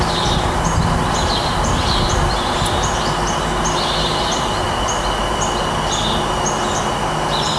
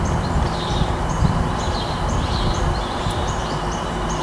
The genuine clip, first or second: first